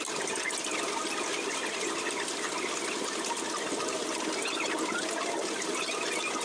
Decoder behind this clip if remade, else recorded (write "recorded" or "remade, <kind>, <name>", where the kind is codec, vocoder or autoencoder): recorded